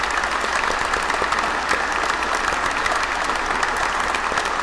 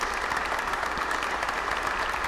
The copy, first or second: second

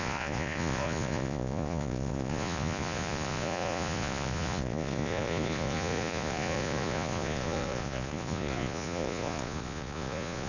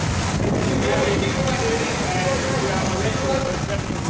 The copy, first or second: first